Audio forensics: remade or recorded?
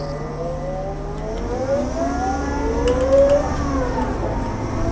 recorded